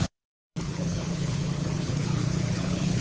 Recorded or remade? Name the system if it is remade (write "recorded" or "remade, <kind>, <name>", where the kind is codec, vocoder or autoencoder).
remade, codec, HILCodec